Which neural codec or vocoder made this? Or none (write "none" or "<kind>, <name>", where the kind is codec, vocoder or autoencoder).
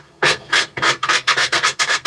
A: codec, SNAC